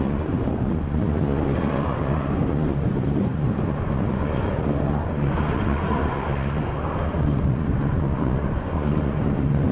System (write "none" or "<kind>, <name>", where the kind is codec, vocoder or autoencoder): vocoder, Vocos